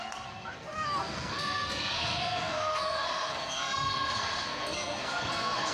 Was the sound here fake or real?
fake